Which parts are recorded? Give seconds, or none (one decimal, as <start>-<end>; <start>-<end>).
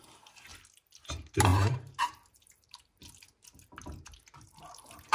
0.5-1.1; 3.0-4.0